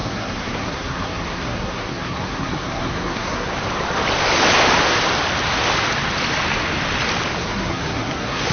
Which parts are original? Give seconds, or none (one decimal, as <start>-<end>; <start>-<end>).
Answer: 3.5-7.4